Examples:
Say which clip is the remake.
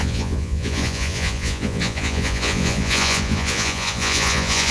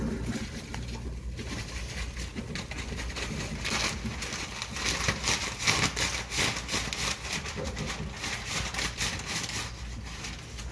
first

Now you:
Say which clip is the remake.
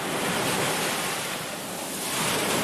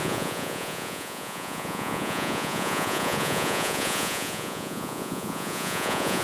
second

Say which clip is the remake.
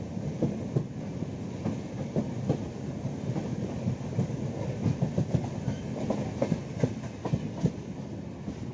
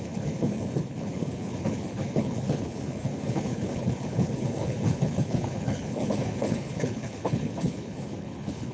second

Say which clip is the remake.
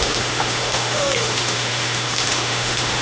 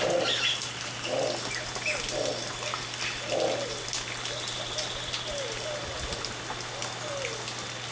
first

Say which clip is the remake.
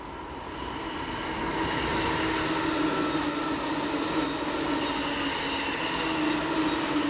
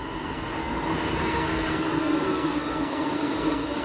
second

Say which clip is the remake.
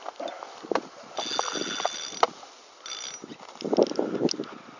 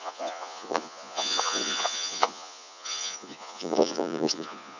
second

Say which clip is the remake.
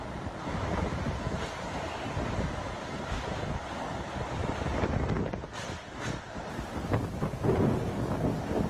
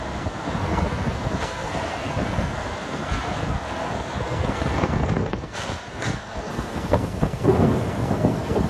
second